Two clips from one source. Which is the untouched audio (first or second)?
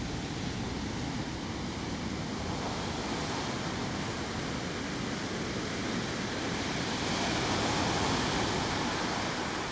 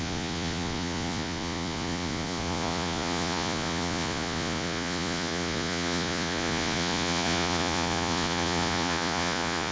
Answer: first